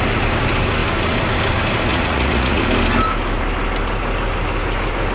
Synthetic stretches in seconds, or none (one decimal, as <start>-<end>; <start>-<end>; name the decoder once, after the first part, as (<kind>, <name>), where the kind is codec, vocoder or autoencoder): 1.9-2.6 (vocoder, Vocos)